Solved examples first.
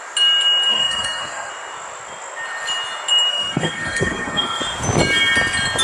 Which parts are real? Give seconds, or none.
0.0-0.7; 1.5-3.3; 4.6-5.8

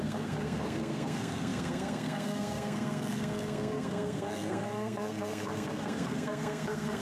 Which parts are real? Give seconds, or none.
none

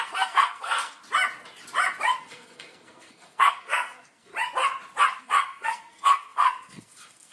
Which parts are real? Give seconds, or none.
1.0-2.2; 4.3-5.2

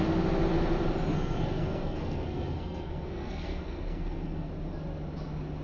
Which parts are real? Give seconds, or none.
0.0-1.1; 4.5-5.6

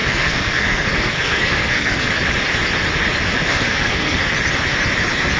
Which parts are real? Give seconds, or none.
2.1-3.5; 4.2-5.4